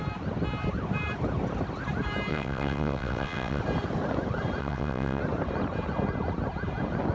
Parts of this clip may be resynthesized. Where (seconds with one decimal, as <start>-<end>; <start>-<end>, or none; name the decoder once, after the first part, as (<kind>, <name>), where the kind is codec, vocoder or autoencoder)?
2.3-3.6 (vocoder, WaveNeXt); 4.6-5.2